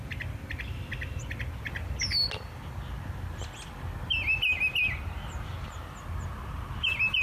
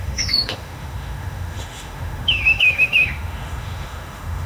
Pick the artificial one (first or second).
second